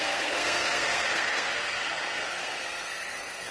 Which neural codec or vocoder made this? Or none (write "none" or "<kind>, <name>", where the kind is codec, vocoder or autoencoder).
codec, SNAC